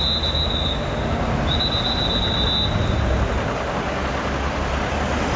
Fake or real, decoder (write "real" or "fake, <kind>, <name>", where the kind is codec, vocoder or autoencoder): real